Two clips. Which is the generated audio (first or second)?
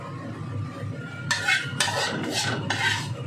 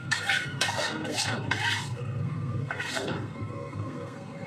second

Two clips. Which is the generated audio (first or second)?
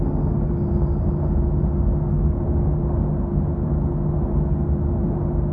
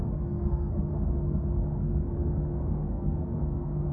second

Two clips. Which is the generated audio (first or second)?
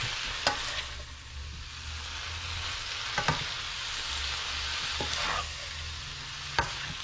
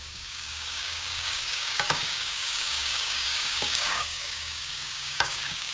second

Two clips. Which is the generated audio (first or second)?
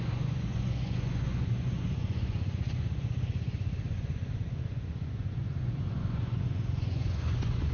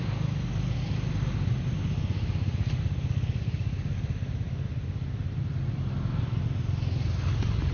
first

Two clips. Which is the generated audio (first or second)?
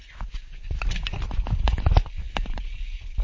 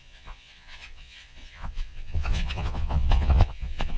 second